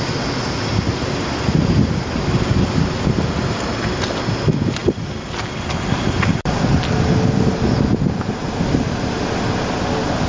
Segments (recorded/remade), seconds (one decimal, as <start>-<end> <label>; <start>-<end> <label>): 0.0-4.8 recorded; 4.8-6.6 remade; 6.6-10.3 recorded